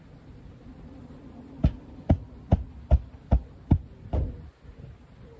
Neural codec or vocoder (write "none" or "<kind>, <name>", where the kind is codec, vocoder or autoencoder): none